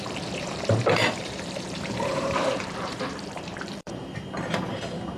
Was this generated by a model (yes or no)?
yes